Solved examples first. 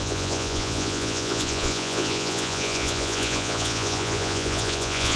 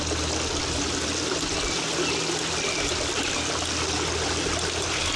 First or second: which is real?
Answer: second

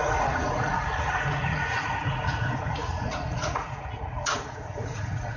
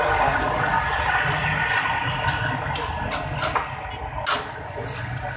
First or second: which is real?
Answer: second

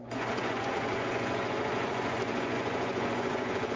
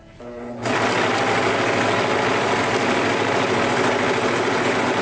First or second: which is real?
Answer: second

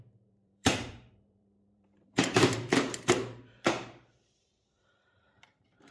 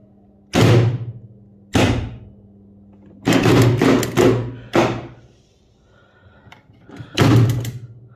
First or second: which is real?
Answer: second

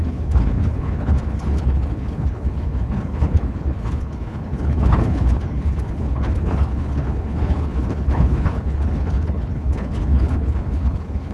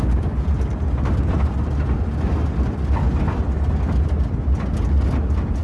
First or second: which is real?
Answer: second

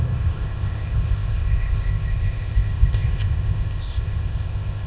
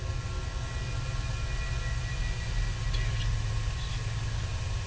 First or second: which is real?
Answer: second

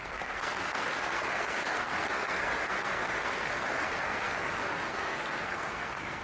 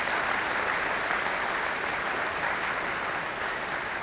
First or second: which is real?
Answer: second